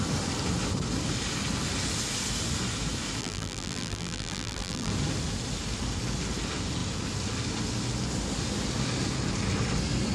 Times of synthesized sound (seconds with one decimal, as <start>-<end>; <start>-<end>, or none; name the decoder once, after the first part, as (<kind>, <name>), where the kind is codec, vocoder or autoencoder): 3.2-4.9 (vocoder, BigVGAN v2)